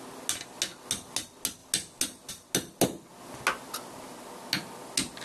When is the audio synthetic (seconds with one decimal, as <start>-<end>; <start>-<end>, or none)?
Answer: none